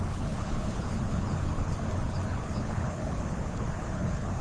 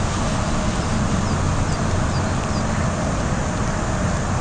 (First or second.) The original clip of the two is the second